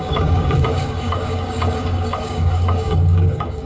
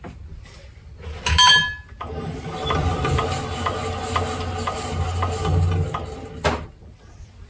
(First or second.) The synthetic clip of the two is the first